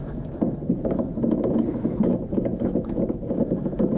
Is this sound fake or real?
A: fake